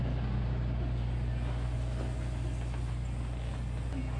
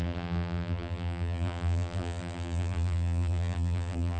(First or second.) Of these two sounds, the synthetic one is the second